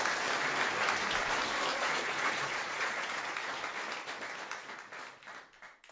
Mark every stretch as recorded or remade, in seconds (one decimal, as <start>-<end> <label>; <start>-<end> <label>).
0.0-1.7 recorded; 1.7-3.2 remade; 3.2-5.9 recorded